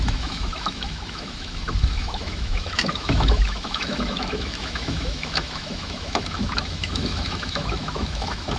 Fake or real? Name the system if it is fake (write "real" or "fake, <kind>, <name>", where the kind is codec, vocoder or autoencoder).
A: fake, autoencoder, DAC-VAE